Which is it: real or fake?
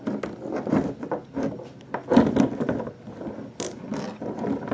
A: real